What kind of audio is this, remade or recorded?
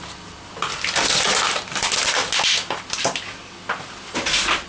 recorded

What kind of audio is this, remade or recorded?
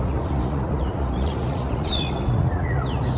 remade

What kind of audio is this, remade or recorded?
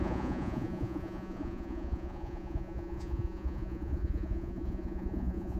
remade